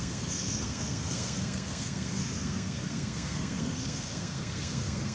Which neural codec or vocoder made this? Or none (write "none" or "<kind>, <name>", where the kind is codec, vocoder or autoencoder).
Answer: codec, SNAC